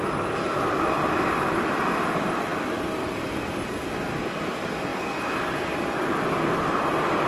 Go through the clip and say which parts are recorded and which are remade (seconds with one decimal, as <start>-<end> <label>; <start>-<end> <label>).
0.0-7.3 remade